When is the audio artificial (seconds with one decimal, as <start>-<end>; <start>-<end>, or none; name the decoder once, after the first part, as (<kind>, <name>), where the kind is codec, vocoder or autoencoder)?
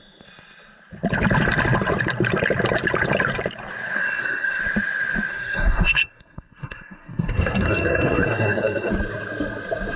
4.0-4.6 (codec, SNAC); 5.3-8.9